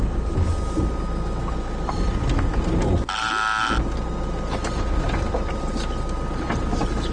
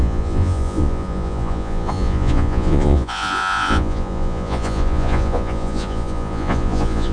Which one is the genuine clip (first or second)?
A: first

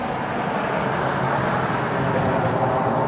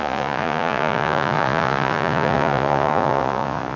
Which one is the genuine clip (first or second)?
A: first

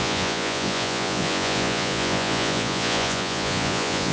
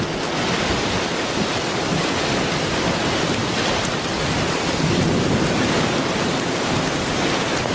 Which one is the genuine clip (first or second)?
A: second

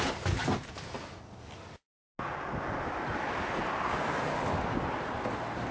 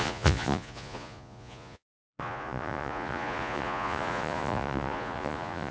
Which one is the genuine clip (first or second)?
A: first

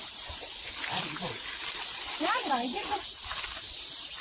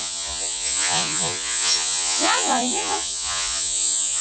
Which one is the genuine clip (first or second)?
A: first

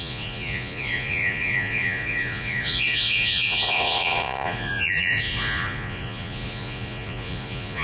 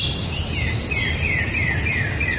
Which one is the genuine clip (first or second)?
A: second